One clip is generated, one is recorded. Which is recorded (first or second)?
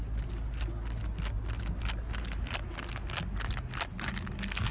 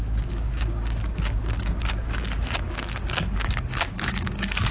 first